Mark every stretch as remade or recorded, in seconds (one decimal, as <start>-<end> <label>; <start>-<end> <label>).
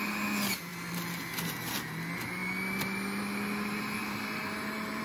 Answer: 0.0-0.7 recorded; 0.7-1.3 remade; 1.3-4.0 recorded; 4.0-5.0 remade